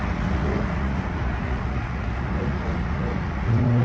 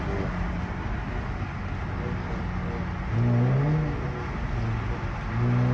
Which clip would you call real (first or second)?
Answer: second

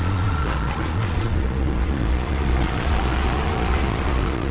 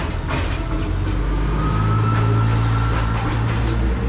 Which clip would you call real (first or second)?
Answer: second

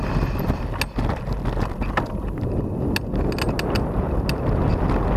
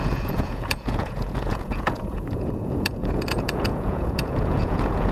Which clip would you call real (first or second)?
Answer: first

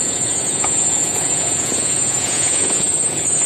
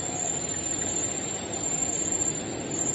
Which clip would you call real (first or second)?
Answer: second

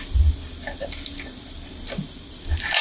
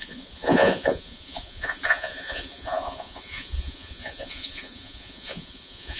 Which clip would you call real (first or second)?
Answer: first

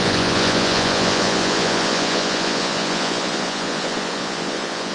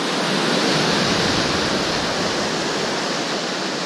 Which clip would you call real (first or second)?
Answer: second